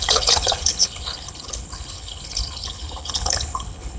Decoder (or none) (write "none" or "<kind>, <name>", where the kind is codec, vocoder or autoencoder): codec, HILCodec